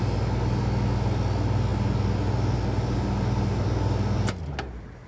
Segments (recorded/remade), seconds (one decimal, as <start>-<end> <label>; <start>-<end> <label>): 0.0-5.1 recorded